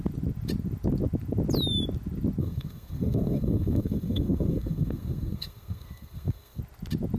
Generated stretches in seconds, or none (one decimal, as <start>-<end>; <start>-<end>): 2.4-6.6